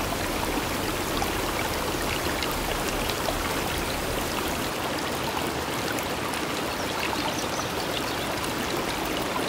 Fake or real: real